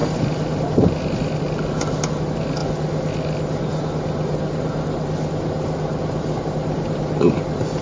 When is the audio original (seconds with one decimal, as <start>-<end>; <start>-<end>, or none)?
0.0-7.8